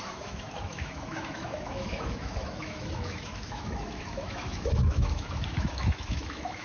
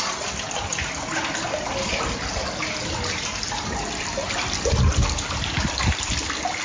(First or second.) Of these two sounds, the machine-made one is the first